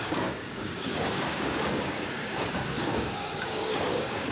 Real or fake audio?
fake